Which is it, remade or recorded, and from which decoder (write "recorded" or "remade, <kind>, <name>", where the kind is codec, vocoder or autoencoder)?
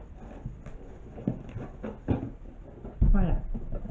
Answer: recorded